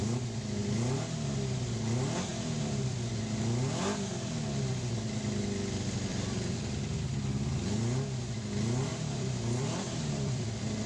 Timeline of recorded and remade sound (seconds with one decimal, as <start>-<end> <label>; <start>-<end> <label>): 0.0-2.3 recorded; 2.3-3.1 remade; 3.1-6.1 recorded; 6.1-7.0 remade; 7.0-8.9 recorded; 8.9-10.9 remade

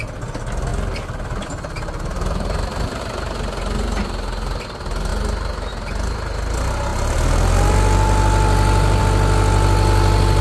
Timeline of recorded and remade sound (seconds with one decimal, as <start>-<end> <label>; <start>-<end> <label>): 0.0-0.7 recorded; 0.7-3.0 remade; 3.0-6.9 recorded; 6.9-9.0 remade; 9.0-10.4 recorded

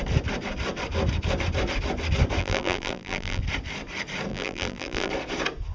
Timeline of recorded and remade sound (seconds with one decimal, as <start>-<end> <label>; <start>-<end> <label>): 0.0-2.4 recorded; 2.4-3.4 remade; 3.4-4.3 recorded; 4.3-5.1 remade; 5.1-5.7 recorded

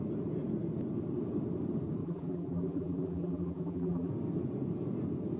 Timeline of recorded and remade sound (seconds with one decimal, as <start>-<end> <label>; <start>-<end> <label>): 0.0-2.0 recorded; 2.0-4.1 remade; 4.1-5.4 recorded

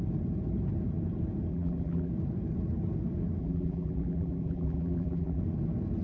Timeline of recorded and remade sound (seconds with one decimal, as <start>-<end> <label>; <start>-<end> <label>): 0.0-1.5 recorded; 1.5-2.1 remade; 2.1-3.4 recorded; 3.4-5.4 remade; 5.4-6.0 recorded

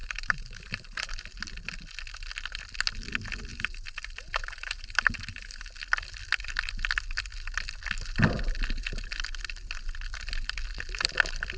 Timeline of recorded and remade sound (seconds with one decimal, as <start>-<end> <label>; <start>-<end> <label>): 0.0-1.1 remade; 1.1-3.5 recorded; 3.5-5.7 remade; 5.7-11.6 recorded

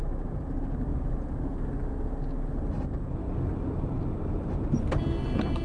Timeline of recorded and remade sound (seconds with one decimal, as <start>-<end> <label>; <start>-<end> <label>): 0.0-5.6 recorded

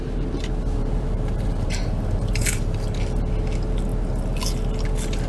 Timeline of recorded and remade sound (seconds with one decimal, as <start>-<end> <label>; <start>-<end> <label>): 0.0-0.8 recorded; 0.8-2.8 remade; 2.8-5.3 recorded